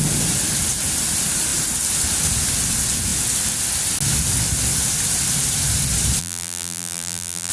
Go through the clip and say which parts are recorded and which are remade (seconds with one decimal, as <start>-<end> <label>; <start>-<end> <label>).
0.0-6.2 recorded; 6.2-7.5 remade